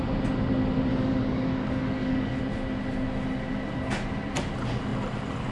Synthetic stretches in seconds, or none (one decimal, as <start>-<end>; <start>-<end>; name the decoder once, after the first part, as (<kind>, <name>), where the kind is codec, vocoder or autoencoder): 0.9-2.4 (codec, DAC)

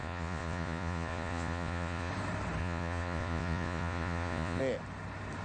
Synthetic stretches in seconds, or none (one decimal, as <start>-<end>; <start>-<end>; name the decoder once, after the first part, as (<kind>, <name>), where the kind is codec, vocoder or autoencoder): 0.0-2.1 (vocoder, Vocos); 2.6-4.6